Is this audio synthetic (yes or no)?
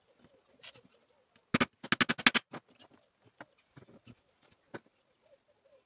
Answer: no